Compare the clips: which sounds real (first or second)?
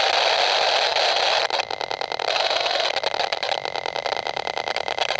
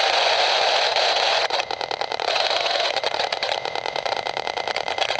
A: first